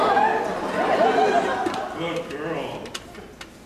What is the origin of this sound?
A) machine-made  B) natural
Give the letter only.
B